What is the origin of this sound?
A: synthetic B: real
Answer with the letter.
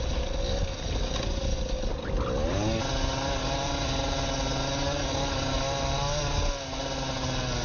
B